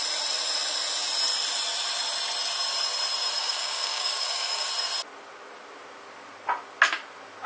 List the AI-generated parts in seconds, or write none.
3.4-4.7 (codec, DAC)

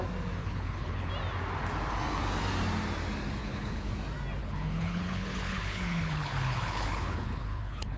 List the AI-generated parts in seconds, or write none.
0.4-1.1 (codec, HILCodec); 3.4-3.9; 4.4-8.0

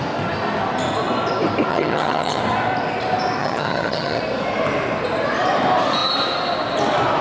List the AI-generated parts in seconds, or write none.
1.7-2.4 (vocoder, HiFi-GAN); 3.4-4.2

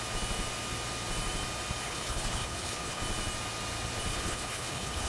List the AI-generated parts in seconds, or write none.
1.8-3.0 (codec, HILCodec); 4.1-5.1

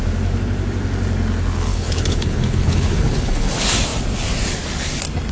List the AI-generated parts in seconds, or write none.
1.7-3.5 (codec, HILCodec)

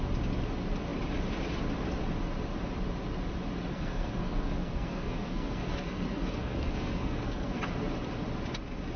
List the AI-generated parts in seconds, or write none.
3.7-7.6 (codec, SNAC)

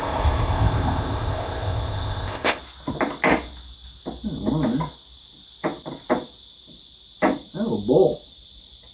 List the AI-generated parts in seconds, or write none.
0.0-2.6 (codec, ZipCodec)

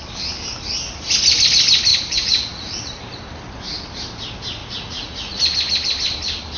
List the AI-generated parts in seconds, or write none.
1.9-3.0 (vocoder, Vocos); 4.6-5.4